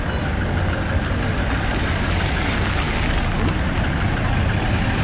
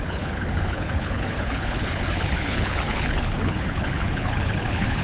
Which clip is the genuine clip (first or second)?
first